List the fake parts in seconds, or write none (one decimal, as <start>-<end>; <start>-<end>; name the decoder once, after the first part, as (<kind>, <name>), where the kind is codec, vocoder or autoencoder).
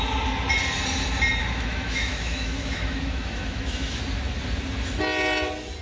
1.4-4.0 (autoencoder, DAC-VAE)